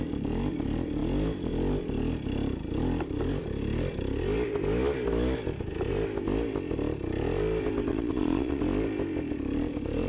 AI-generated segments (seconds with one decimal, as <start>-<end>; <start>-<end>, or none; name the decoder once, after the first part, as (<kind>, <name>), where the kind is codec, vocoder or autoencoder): 7.9-8.6 (vocoder, Vocos)